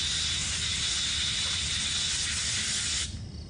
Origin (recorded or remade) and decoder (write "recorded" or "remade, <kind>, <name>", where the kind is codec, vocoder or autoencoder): recorded